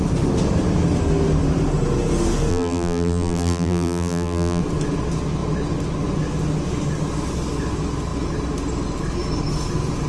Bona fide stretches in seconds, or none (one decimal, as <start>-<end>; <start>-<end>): 0.0-2.5; 4.6-10.1